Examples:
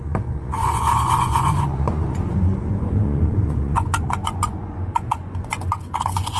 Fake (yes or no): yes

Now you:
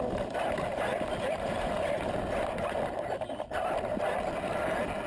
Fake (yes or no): no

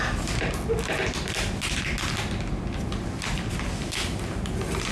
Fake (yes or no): no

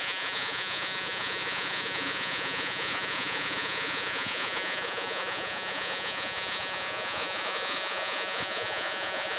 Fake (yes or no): yes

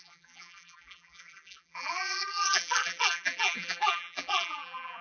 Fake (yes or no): yes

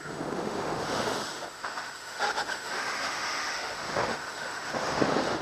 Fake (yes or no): yes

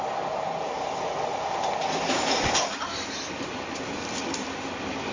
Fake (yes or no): no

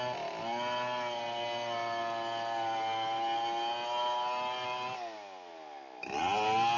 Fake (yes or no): no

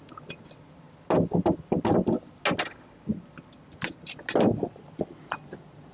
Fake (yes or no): no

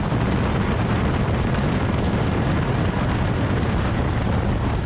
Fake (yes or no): no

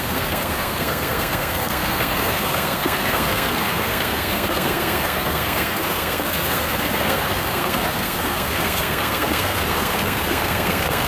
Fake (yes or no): yes